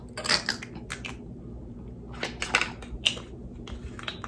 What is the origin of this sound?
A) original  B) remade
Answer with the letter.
A